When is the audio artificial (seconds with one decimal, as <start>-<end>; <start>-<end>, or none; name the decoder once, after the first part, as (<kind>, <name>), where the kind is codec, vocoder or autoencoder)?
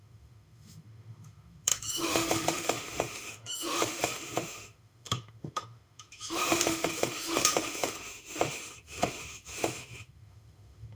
0.0-11.0 (autoencoder, DAC-VAE)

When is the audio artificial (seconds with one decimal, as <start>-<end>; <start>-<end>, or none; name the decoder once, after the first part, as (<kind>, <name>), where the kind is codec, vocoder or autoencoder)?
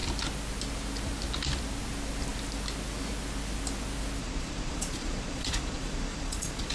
4.2-6.7 (vocoder, Vocos)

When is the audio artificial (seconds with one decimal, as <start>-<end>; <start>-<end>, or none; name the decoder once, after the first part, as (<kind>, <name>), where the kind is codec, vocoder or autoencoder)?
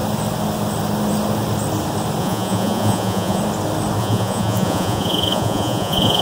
2.2-3.4 (vocoder, Vocos); 4.0-6.2